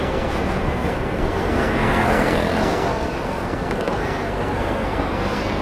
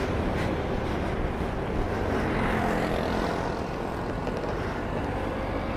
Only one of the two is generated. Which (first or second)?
first